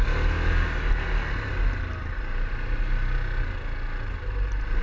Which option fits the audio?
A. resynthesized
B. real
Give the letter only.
B